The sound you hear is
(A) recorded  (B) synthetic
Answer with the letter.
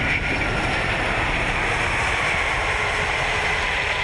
A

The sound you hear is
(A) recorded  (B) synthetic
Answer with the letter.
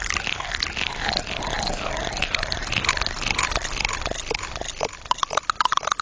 A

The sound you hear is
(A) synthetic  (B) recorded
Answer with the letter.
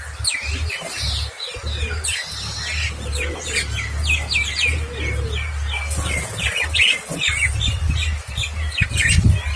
B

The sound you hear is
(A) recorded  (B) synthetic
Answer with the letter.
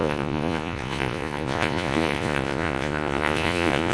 B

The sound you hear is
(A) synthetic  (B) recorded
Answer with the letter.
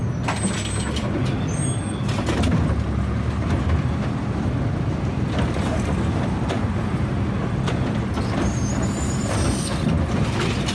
B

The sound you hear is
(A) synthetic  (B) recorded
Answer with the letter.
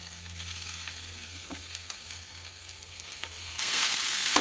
A